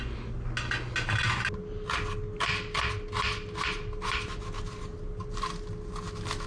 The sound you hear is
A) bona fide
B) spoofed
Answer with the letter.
A